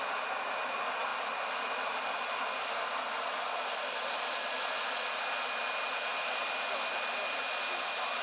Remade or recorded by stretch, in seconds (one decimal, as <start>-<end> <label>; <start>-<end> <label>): 0.0-8.2 recorded